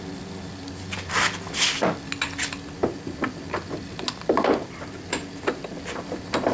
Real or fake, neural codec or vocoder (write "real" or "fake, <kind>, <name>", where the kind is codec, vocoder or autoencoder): real